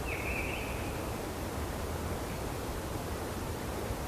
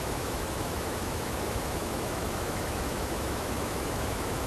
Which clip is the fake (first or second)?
second